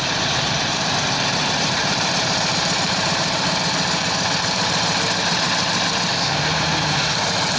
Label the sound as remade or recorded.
remade